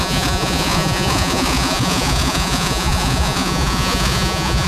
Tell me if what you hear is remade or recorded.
remade